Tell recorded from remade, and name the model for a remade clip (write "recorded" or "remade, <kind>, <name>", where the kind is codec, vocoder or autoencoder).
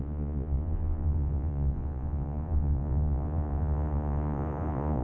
remade, vocoder, Vocos